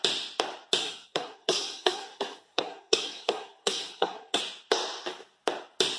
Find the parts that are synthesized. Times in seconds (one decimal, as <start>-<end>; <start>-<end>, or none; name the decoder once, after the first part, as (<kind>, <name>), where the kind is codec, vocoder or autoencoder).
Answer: 0.8-4.4 (codec, SNAC)